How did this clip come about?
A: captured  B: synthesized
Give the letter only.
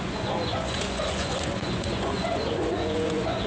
B